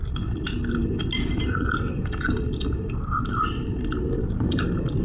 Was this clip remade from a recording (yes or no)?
no